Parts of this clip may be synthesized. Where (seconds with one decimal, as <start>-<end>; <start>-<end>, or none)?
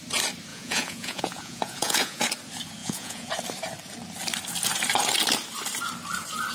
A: 0.5-2.2; 2.8-3.3